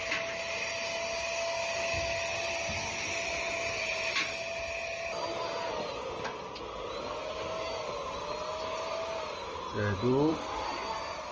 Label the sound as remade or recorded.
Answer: recorded